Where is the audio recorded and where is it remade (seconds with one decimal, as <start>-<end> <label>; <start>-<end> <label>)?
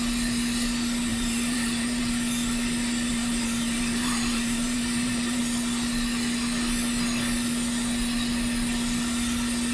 0.0-1.1 recorded; 1.1-2.0 remade; 2.0-3.1 recorded; 3.1-5.4 remade; 5.4-9.7 recorded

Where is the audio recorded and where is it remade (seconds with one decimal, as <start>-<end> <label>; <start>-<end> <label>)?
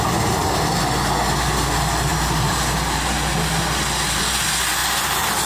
0.0-2.1 recorded; 2.1-4.2 remade; 4.2-4.8 recorded; 4.8-5.5 remade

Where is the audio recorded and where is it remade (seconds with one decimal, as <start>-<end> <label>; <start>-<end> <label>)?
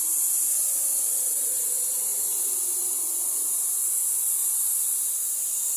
0.0-4.4 recorded; 4.4-5.1 remade; 5.1-5.8 recorded